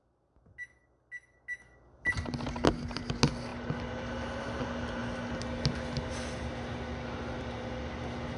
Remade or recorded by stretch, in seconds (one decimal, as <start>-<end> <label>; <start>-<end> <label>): 0.0-8.4 recorded